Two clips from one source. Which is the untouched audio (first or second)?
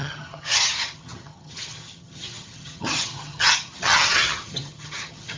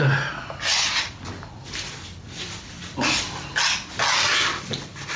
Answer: second